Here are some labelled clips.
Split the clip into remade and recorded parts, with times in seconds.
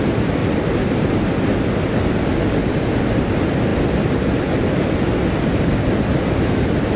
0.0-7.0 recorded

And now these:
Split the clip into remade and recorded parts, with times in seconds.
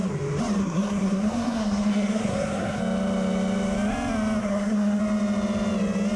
0.0-0.6 recorded; 0.6-2.8 remade; 2.8-4.4 recorded; 4.4-5.0 remade; 5.0-6.2 recorded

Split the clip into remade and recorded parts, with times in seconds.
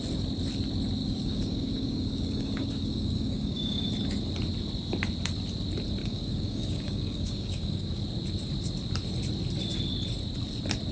0.0-1.0 recorded; 1.0-3.9 remade; 3.9-6.0 recorded; 6.0-8.0 remade; 8.0-10.9 recorded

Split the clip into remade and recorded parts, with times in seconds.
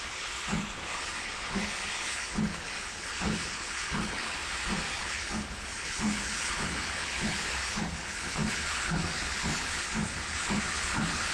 0.0-4.4 remade; 4.4-5.0 recorded; 5.0-11.3 remade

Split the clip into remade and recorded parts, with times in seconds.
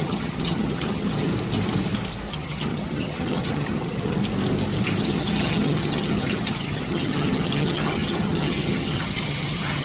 0.0-1.3 remade; 1.3-2.3 recorded; 2.3-4.2 remade; 4.2-5.0 recorded; 5.0-9.8 remade